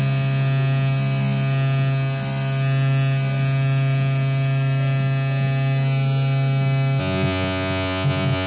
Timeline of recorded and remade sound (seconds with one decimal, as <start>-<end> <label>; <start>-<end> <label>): 0.0-7.0 recorded; 7.0-8.5 remade